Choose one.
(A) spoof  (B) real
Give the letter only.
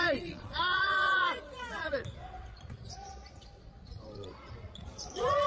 A